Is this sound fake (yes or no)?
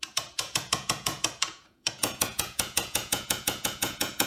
yes